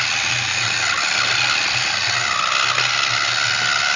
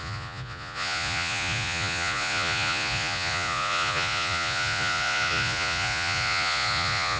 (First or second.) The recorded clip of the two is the first